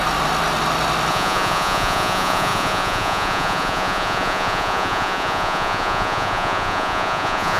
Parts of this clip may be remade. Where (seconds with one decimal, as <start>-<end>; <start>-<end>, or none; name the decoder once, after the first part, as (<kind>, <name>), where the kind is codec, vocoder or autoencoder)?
1.1-7.6 (vocoder, Vocos)